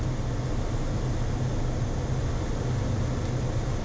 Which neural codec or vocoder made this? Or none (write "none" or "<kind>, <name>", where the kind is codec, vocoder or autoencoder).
none